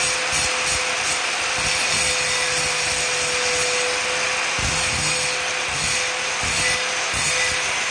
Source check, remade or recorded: recorded